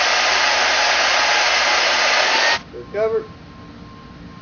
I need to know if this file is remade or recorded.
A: recorded